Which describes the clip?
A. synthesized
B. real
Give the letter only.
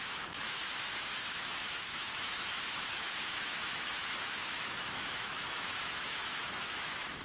A